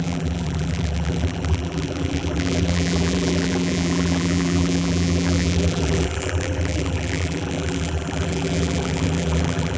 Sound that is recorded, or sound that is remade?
remade